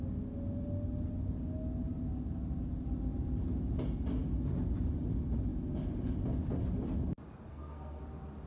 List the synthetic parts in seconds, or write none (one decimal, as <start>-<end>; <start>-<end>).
7.5-8.0